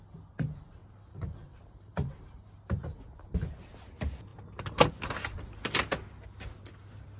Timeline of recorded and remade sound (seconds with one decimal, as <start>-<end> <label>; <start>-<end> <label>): 0.0-0.8 recorded; 0.8-3.0 remade; 3.0-7.2 recorded